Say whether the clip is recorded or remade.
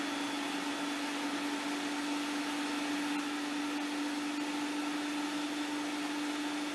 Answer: recorded